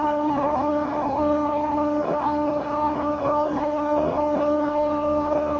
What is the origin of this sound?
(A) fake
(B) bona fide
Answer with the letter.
A